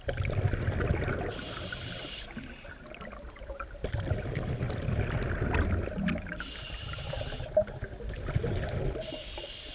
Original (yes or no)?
yes